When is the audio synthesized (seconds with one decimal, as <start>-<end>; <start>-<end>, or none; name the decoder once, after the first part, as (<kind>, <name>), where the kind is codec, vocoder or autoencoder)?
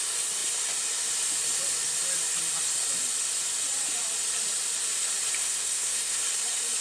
5.4-6.2 (codec, SNAC)